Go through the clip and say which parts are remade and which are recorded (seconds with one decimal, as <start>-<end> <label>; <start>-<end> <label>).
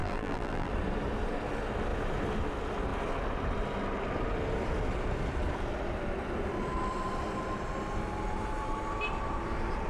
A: 0.0-0.7 remade; 0.7-9.9 recorded